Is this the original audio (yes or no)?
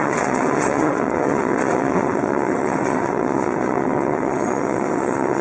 no